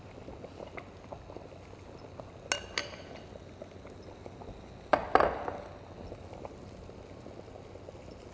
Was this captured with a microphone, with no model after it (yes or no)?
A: yes